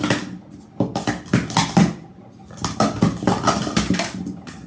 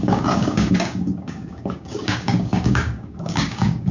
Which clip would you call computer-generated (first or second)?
second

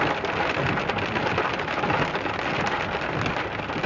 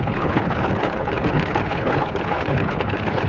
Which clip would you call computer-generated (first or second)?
second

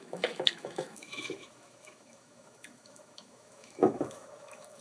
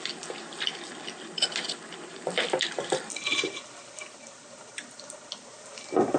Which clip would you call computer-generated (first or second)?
first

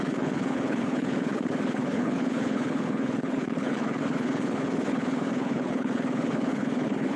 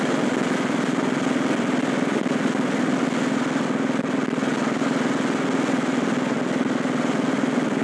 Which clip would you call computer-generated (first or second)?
first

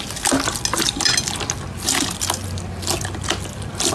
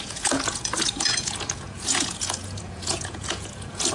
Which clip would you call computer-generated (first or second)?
second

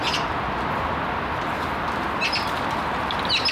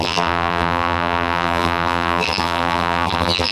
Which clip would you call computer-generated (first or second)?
second